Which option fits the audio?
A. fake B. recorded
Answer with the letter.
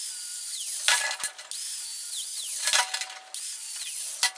B